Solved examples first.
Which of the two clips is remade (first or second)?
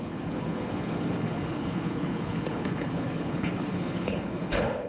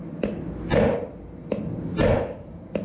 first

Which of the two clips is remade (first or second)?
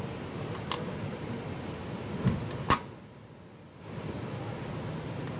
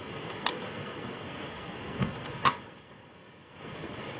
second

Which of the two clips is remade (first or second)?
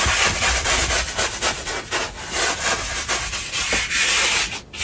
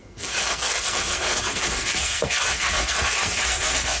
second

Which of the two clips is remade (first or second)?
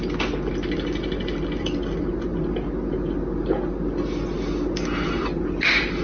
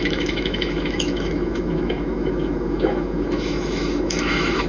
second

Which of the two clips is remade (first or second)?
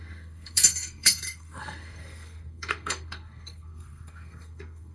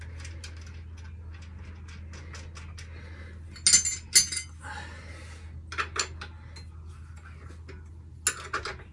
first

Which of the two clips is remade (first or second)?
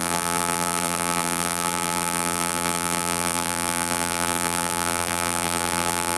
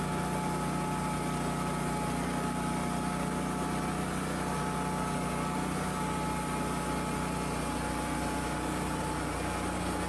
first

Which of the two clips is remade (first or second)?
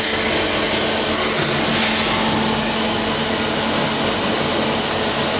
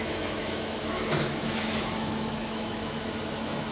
second